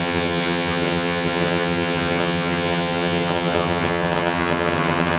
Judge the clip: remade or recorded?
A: remade